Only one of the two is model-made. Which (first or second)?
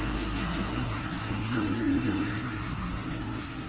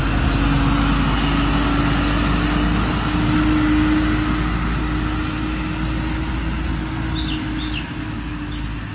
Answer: first